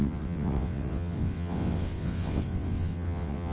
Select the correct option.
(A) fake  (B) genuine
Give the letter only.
A